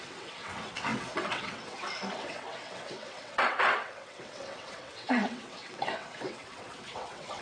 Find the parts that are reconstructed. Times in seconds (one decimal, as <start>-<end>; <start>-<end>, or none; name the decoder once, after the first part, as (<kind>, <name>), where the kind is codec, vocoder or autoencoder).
0.0-7.4 (vocoder, WaveNeXt)